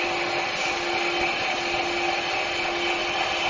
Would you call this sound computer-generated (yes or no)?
no